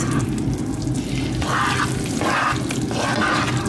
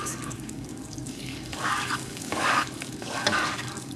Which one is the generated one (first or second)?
second